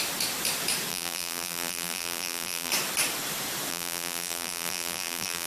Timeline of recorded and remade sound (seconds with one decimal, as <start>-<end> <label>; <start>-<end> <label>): 0.0-0.9 recorded; 0.9-2.7 remade; 2.7-3.7 recorded; 3.7-5.5 remade